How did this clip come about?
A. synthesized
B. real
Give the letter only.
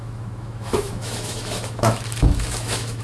A